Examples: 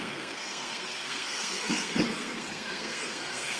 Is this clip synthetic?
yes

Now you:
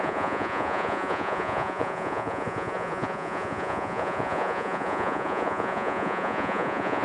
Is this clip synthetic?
yes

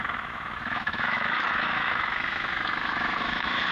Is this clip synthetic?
yes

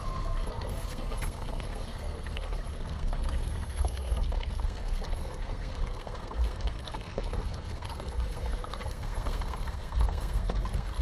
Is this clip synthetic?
yes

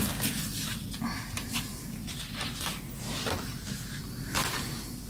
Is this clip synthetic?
no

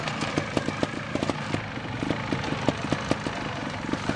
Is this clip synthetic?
no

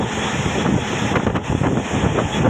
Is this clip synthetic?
no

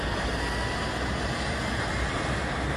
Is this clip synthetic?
no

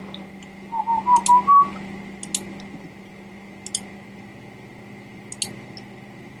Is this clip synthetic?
no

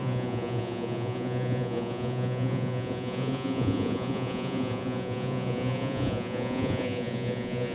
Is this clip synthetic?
yes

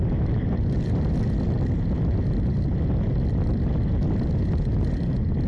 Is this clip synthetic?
no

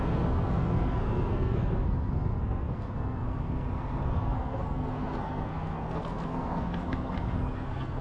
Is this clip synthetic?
yes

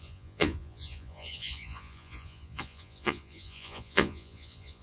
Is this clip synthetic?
yes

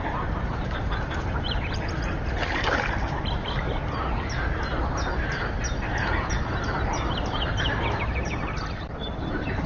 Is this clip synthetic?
yes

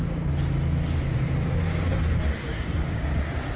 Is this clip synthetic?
no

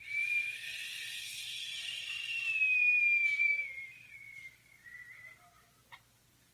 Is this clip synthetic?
no